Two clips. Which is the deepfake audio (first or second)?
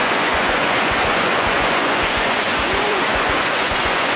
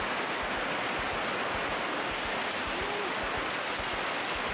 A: first